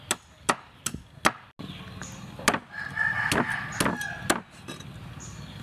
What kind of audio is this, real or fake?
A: real